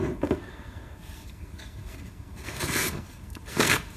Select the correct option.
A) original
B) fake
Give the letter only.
B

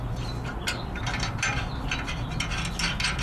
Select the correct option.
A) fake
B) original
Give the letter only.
B